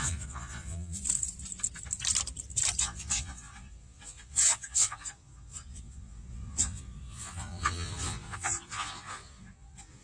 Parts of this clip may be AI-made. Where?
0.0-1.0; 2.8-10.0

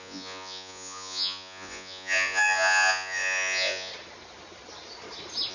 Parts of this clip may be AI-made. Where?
0.0-3.9

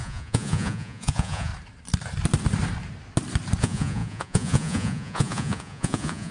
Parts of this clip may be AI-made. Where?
0.0-1.5; 3.6-6.3

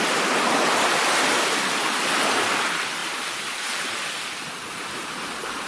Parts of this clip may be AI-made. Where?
none

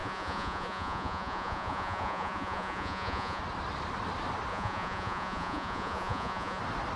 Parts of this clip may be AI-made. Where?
0.0-3.4; 4.5-6.6

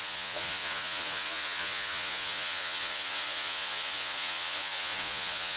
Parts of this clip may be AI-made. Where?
0.0-5.6

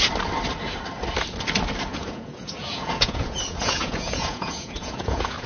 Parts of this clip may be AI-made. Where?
1.9-5.5

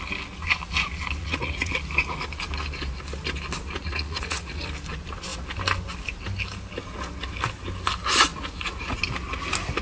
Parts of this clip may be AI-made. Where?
1.2-1.7; 3.8-4.7; 8.3-9.0